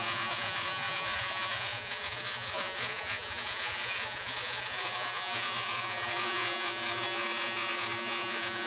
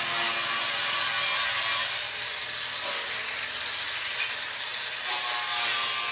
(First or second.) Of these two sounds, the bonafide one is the second